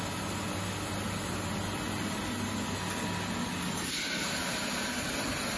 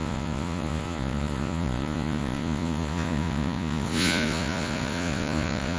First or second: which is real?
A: first